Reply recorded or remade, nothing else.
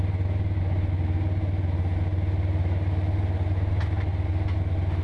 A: recorded